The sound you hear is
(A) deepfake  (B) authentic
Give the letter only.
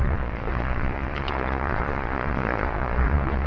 A